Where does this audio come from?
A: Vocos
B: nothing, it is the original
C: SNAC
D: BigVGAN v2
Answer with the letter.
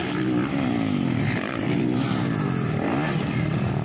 D